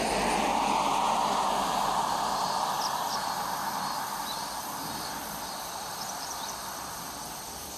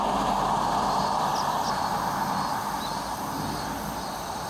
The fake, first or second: first